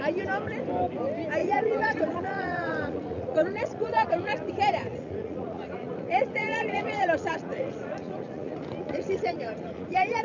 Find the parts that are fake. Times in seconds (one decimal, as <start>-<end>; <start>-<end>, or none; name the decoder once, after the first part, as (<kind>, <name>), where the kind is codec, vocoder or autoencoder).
1.4-4.5 (vocoder, Vocos); 4.9-10.2